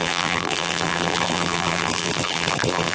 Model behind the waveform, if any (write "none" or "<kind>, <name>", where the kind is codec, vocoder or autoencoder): vocoder, BigVGAN v2